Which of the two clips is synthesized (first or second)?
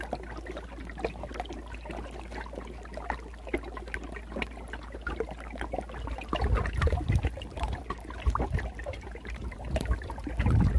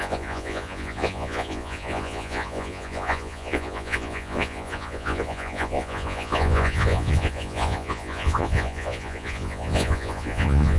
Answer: second